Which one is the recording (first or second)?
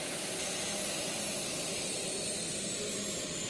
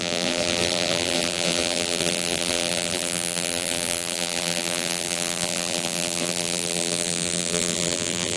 first